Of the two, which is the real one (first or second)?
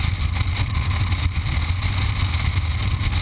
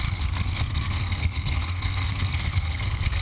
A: first